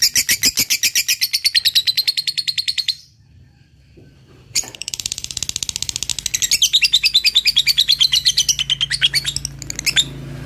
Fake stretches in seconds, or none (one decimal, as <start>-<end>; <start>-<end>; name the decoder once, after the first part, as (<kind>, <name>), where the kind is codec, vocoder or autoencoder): 1.8-5.4 (vocoder, BigVGAN v2)